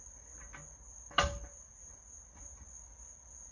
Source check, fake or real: real